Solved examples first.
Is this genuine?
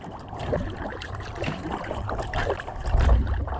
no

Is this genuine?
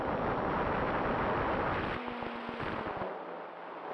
yes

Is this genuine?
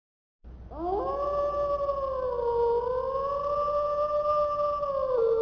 yes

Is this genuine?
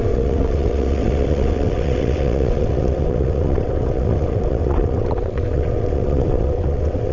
no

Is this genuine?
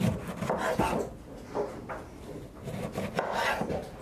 yes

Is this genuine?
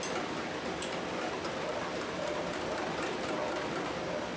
yes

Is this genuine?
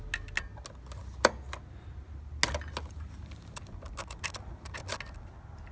yes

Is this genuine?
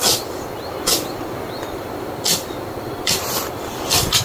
yes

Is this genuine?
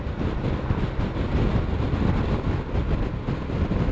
yes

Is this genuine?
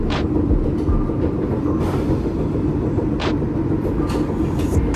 yes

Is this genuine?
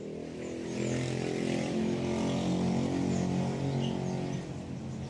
yes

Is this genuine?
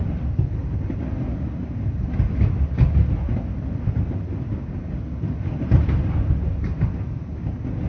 yes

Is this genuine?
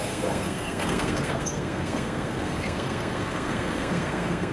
no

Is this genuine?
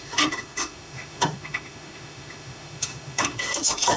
no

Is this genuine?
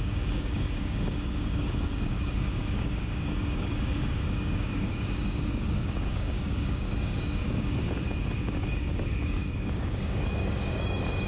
no